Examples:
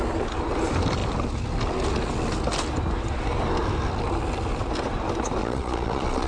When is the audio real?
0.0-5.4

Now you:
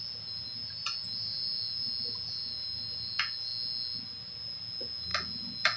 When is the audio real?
0.0-5.8

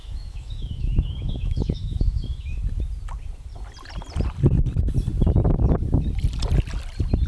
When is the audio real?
2.6-7.3

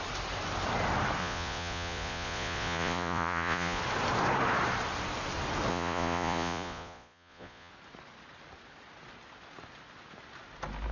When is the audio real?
0.0-1.2; 3.8-5.7; 7.7-10.9

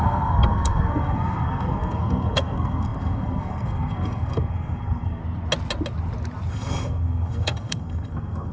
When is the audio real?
5.2-6.5